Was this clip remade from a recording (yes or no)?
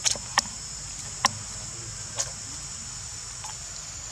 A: no